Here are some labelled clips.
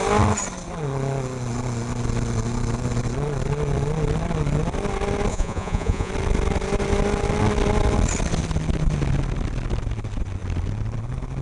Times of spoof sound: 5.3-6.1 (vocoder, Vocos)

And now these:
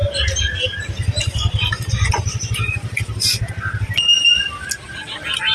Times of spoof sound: none

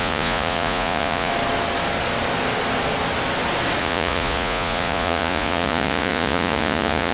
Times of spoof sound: 0.0-1.3 (vocoder, Vocos); 3.8-7.1

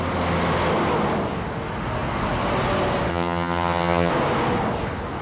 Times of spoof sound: 3.1-4.1 (vocoder, HiFi-GAN)

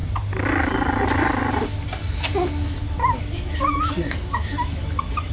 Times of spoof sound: 3.2-5.3 (autoencoder, DAC-VAE)

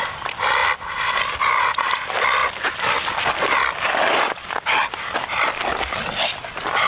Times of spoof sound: 0.0-0.6 (vocoder, BigVGAN v2); 1.2-2.4; 5.5-6.9

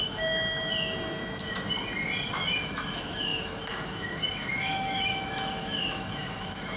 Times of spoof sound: 0.0-0.7 (autoencoder, DAC-VAE); 2.3-6.8

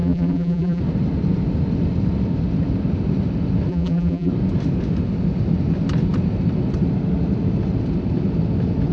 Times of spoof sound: 0.0-0.8 (vocoder, BigVGAN v2); 3.7-4.3